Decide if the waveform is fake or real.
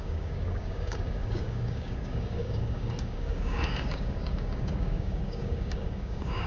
fake